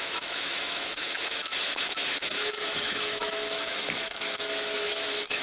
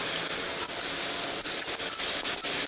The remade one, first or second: first